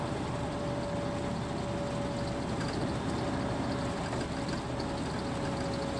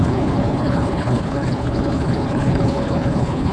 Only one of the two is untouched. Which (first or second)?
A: first